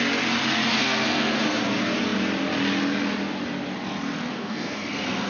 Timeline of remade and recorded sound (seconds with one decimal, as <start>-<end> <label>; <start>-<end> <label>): 0.0-0.8 recorded; 0.8-1.6 remade; 1.6-4.3 recorded; 4.3-5.3 remade